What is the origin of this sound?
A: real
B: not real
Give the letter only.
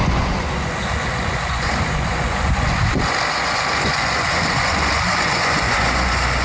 B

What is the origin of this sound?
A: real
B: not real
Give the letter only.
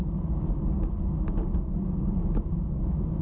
A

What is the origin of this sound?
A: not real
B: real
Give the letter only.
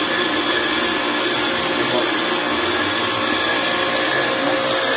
B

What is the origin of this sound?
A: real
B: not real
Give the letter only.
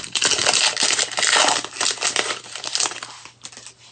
A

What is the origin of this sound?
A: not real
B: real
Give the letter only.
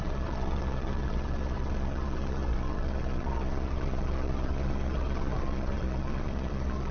A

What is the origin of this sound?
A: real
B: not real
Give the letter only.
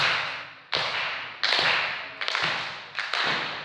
A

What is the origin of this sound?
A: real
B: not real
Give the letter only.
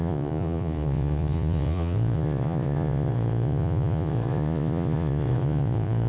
B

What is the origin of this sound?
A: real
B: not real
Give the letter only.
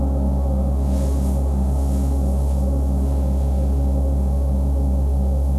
B